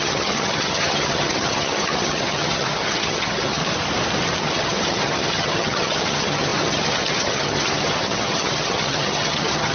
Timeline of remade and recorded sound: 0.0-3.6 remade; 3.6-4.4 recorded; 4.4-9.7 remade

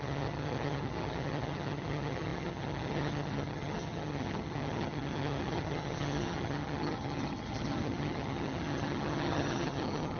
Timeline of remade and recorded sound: 0.0-10.2 remade

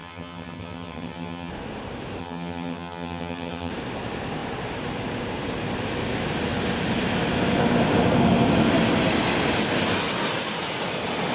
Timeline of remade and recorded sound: 0.0-1.5 remade; 1.5-2.2 recorded; 2.2-3.7 remade; 3.7-11.3 recorded

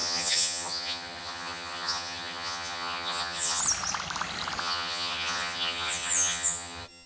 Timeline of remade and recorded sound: 0.0-3.6 remade; 3.6-4.6 recorded; 4.6-7.1 remade

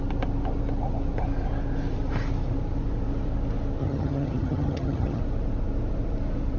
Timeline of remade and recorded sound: 0.0-3.8 recorded; 3.8-5.2 remade; 5.2-6.6 recorded

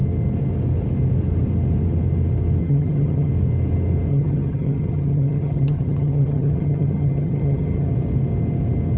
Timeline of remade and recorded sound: 0.0-2.6 recorded; 2.6-3.3 remade; 3.3-4.1 recorded; 4.1-7.9 remade; 7.9-9.0 recorded

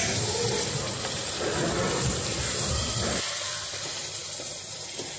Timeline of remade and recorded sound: 0.0-5.2 recorded

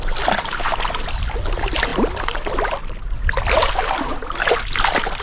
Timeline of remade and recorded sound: 0.0-5.2 recorded